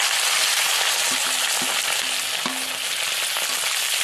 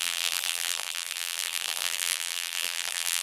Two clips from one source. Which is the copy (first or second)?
second